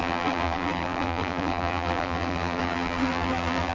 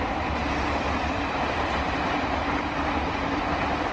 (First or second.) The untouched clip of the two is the second